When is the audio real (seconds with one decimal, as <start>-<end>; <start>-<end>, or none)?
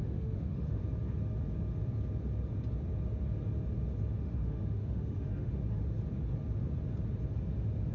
0.8-4.2; 5.6-7.9